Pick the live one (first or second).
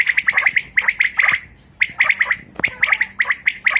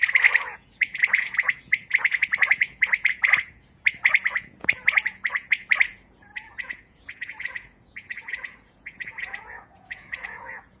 first